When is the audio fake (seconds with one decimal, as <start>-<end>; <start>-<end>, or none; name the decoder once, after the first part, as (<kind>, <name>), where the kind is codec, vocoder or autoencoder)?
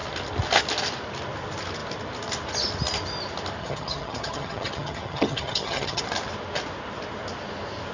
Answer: 3.6-6.0 (vocoder, HiFi-GAN)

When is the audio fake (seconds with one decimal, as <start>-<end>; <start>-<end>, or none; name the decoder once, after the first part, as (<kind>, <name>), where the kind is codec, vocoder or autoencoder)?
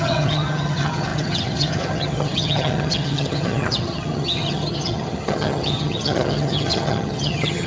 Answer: 0.0-7.7 (vocoder, HiFi-GAN)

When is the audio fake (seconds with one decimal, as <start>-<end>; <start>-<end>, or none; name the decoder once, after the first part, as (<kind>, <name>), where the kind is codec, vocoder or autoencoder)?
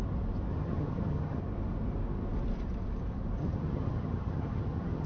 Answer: 0.5-1.4 (vocoder, HiFi-GAN); 3.4-5.1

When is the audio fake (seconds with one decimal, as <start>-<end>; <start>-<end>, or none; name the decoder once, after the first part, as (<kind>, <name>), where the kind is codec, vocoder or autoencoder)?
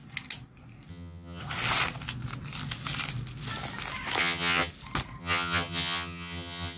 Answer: 0.9-1.4 (vocoder, HiFi-GAN); 4.2-4.7; 5.2-6.8